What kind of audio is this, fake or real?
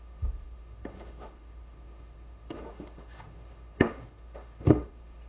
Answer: fake